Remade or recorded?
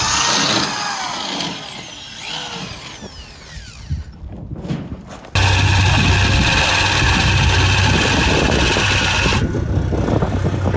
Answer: recorded